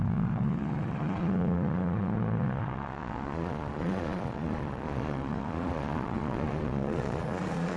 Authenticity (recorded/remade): remade